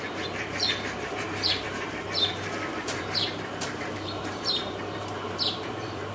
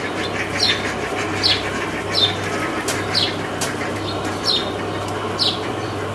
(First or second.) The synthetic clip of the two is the first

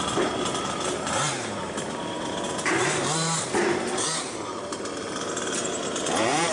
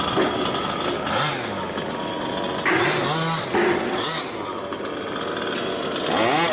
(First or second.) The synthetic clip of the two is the first